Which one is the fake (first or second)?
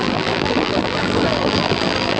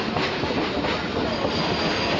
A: first